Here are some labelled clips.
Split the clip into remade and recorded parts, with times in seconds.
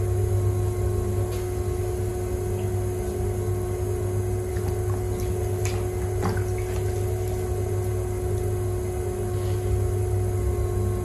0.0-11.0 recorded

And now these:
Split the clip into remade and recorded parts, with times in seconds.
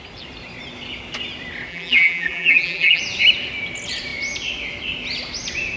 0.0-1.7 recorded; 1.7-3.0 remade; 3.0-5.8 recorded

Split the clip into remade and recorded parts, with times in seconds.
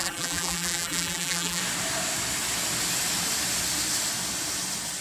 0.0-1.6 remade; 1.6-5.0 recorded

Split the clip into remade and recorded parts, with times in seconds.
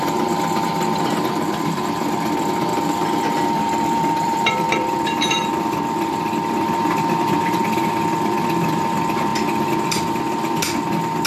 0.0-9.3 remade; 9.3-11.3 recorded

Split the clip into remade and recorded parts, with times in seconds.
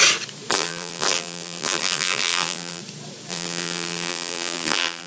0.0-0.5 recorded; 0.5-2.8 remade; 2.8-3.3 recorded; 3.3-5.1 remade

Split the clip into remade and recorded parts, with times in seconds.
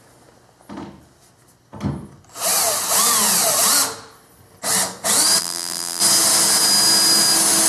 0.0-5.4 recorded; 5.4-6.0 remade; 6.0-7.7 recorded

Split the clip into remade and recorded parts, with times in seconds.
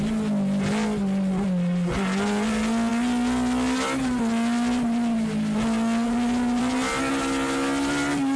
0.0-8.4 recorded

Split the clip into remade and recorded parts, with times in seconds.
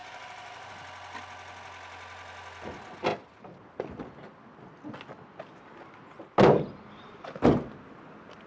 0.0-0.7 remade; 0.7-3.1 recorded; 3.1-3.6 remade; 3.6-5.5 recorded; 5.5-7.2 remade; 7.2-8.5 recorded